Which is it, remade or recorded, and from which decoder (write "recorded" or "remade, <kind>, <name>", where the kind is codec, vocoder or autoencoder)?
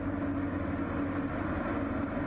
recorded